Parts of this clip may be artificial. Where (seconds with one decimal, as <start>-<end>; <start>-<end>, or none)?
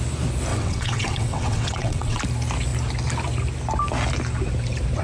0.5-2.2